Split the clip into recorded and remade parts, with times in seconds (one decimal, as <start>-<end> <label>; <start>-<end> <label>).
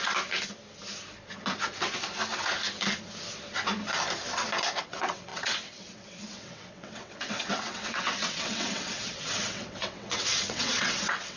0.0-4.8 recorded; 4.8-11.4 remade